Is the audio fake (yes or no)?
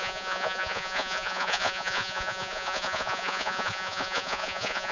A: yes